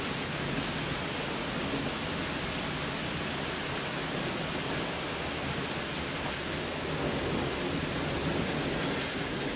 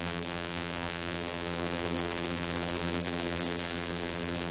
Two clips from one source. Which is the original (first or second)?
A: first